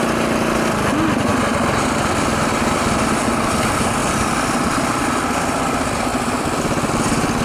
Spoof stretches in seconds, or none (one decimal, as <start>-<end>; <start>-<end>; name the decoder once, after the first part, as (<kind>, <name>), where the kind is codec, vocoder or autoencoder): 1.3-2.1 (vocoder, BigVGAN v2); 4.0-5.1; 6.1-6.9

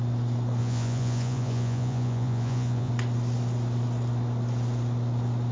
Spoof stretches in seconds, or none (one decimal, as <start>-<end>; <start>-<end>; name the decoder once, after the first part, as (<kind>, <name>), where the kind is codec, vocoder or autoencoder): 0.6-2.9 (vocoder, Vocos)

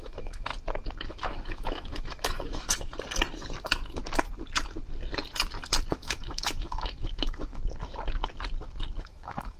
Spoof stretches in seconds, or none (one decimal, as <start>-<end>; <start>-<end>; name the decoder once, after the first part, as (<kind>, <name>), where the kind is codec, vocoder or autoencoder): 0.0-0.5 (autoencoder, DAC-VAE); 1.1-2.9; 5.9-7.6; 9.0-9.6

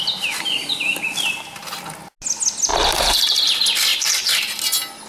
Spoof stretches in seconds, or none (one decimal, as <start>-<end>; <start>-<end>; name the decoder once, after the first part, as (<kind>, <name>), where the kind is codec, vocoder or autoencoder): 2.7-3.4 (vocoder, BigVGAN v2); 3.9-4.4

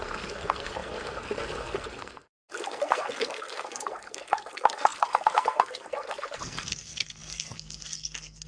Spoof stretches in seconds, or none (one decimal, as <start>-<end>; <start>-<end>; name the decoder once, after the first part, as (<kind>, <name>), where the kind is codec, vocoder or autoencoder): 0.0-8.5 (codec, SNAC)

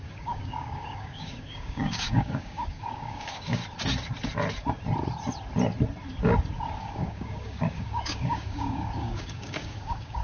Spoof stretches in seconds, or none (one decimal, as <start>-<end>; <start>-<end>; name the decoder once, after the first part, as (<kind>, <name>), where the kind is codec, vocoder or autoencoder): 0.0-3.6 (codec, DAC); 6.8-10.2

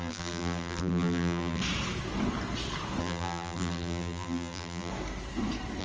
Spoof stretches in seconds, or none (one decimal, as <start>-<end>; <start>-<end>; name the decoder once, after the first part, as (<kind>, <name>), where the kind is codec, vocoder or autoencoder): 0.0-1.6 (vocoder, BigVGAN v2); 3.0-4.9